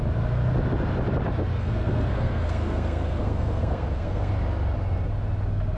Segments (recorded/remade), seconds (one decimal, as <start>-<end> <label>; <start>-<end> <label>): 0.0-1.6 recorded; 1.6-4.3 remade; 4.3-5.8 recorded